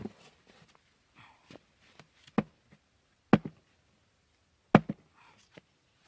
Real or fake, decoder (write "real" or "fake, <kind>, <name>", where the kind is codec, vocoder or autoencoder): real